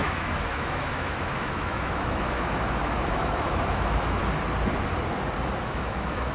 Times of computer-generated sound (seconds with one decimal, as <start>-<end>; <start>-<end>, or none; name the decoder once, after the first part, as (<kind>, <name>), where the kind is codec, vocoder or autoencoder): 0.0-4.2 (autoencoder, DAC-VAE); 5.6-6.3